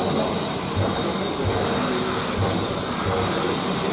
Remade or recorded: recorded